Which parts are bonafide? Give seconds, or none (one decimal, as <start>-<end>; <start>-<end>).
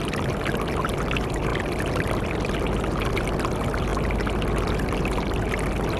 0.0-6.0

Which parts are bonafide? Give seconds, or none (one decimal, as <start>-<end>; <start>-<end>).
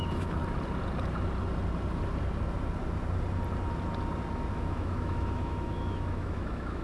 0.4-4.5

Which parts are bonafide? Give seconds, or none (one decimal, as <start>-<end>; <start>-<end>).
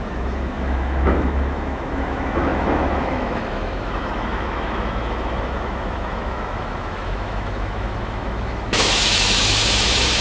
none